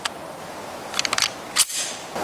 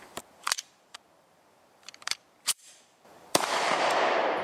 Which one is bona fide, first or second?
first